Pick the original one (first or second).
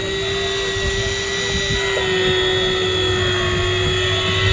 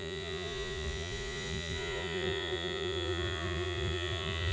first